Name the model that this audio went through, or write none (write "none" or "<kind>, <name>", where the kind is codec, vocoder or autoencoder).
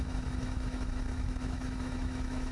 autoencoder, DAC-VAE